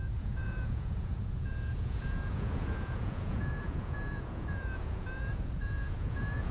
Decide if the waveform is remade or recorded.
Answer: remade